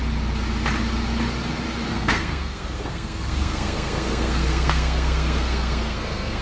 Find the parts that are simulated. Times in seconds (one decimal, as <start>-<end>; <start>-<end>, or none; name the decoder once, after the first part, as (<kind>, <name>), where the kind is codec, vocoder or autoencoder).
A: 1.9-6.4 (codec, SNAC)